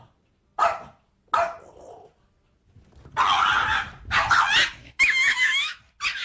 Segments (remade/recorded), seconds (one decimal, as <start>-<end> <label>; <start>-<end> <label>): 0.0-4.8 recorded; 4.8-5.8 remade; 5.8-6.2 recorded